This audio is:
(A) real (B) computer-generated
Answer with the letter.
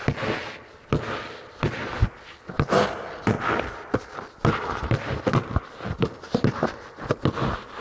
A